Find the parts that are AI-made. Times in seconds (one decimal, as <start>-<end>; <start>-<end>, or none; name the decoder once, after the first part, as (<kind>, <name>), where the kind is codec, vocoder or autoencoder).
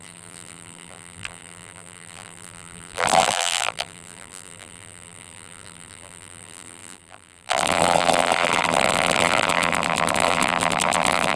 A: 0.0-11.4 (vocoder, BigVGAN v2)